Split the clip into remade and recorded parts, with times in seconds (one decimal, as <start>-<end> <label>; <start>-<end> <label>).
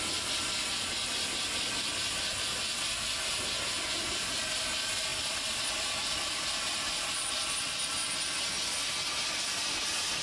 0.0-5.1 recorded; 5.1-5.6 remade; 5.6-6.0 recorded; 6.0-6.5 remade; 6.5-10.2 recorded